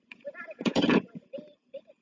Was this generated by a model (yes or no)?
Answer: yes